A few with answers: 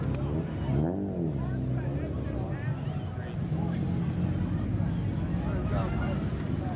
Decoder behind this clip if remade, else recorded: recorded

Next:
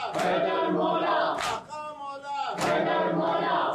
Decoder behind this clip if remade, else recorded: recorded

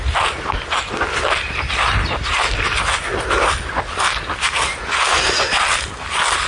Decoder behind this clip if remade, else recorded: recorded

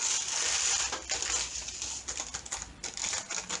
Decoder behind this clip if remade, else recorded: recorded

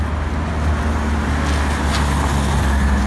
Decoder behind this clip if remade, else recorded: recorded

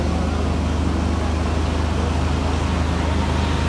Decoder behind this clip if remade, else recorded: recorded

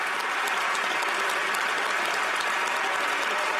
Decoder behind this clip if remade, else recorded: recorded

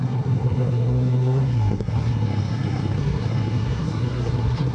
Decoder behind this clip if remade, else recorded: remade, codec, SNAC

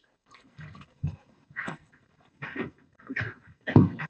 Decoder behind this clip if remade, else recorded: remade, codec, SNAC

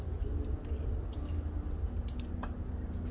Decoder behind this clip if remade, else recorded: recorded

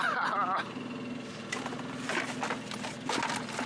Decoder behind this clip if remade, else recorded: recorded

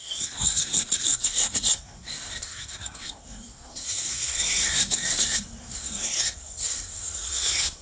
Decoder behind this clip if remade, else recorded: remade, codec, SNAC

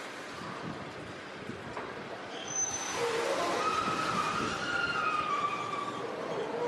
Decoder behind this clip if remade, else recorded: recorded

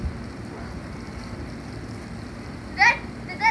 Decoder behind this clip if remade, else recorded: recorded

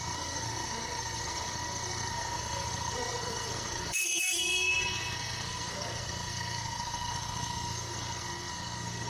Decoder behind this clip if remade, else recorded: remade, codec, SNAC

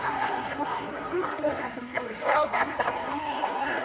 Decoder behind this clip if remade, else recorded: remade, codec, SNAC